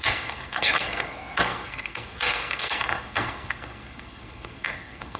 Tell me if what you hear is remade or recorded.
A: remade